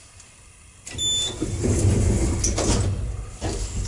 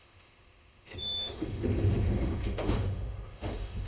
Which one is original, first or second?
first